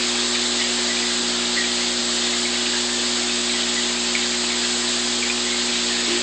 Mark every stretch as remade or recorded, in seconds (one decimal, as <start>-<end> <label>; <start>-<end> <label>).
0.0-6.2 recorded